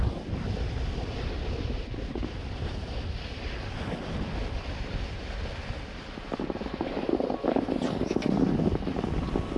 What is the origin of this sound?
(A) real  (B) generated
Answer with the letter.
A